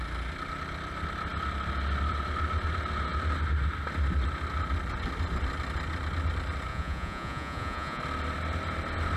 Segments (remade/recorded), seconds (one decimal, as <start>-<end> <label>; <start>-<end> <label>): 0.0-6.7 recorded; 6.7-8.0 remade; 8.0-9.2 recorded